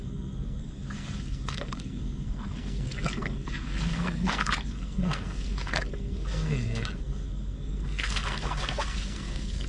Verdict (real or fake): fake